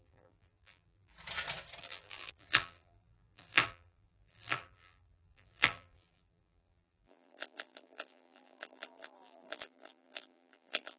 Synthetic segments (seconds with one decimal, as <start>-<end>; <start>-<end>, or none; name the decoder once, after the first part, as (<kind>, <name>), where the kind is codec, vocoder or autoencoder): 0.0-1.1 (vocoder, BigVGAN v2); 1.8-11.0